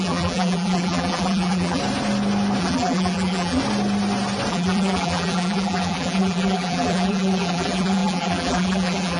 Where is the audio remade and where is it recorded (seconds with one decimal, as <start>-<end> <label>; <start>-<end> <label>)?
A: 0.0-1.8 remade; 1.8-2.6 recorded; 2.6-3.6 remade; 3.6-4.5 recorded; 4.5-9.2 remade